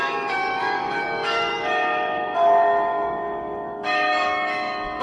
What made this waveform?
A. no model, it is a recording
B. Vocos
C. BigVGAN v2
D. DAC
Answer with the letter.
D